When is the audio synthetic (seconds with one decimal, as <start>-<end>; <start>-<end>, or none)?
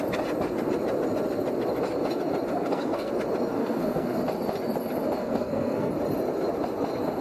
2.5-3.1; 3.6-4.2; 5.2-5.9